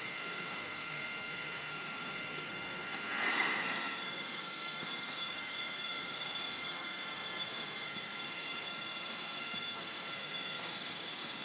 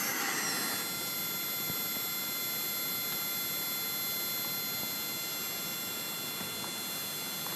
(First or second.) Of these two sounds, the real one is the second